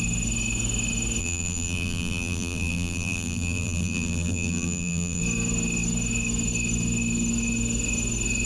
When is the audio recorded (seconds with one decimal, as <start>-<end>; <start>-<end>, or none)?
0.0-1.2; 5.2-8.4